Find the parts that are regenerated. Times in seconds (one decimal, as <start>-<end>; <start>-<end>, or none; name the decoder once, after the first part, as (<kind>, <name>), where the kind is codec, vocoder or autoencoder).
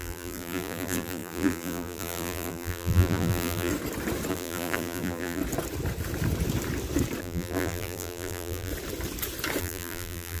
0.0-3.7 (vocoder, BigVGAN v2); 4.3-5.4; 7.2-8.7; 9.6-10.4